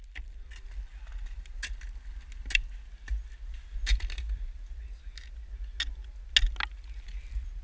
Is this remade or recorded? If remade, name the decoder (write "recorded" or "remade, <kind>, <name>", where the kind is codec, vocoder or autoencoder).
recorded